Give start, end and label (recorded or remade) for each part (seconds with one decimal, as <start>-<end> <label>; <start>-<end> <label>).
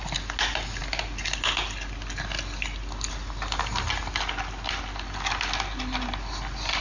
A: 0.0-6.8 recorded